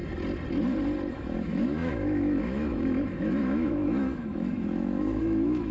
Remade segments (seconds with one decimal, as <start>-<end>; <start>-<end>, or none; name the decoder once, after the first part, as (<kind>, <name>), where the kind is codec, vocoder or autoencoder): 1.1-5.7 (autoencoder, DAC-VAE)